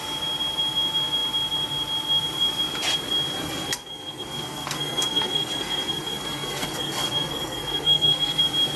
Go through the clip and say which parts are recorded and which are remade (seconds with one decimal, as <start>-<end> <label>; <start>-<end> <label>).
0.0-3.4 recorded; 3.4-8.4 remade; 8.4-8.8 recorded